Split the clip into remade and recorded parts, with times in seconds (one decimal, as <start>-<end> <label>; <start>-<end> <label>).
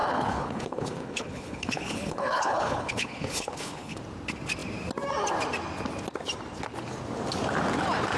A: 0.0-4.0 remade; 4.0-8.2 recorded